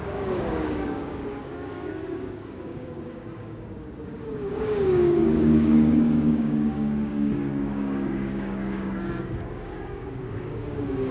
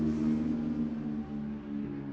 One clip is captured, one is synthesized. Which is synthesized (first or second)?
first